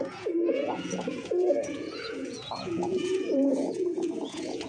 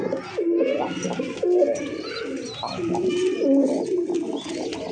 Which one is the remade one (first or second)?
first